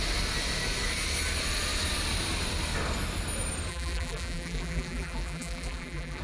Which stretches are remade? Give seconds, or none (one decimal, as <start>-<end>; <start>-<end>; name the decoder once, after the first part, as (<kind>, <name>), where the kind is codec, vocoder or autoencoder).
3.7-6.2 (vocoder, BigVGAN v2)